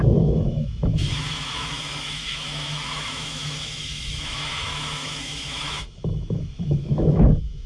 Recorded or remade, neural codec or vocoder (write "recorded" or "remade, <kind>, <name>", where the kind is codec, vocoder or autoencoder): remade, autoencoder, DAC-VAE